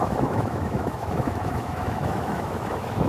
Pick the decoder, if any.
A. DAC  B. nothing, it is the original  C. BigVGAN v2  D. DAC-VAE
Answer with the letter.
D